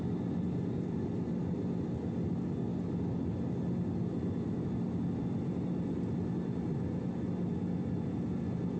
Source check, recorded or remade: recorded